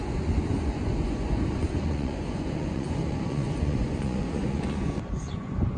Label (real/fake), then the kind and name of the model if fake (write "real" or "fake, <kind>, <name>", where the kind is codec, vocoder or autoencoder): fake, vocoder, Vocos